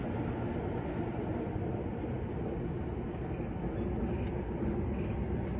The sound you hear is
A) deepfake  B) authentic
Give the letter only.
B